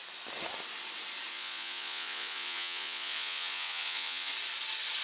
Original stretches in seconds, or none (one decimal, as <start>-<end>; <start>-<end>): 0.0-1.3; 4.3-5.0